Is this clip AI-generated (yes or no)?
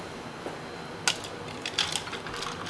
no